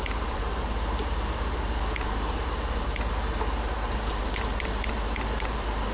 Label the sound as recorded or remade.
remade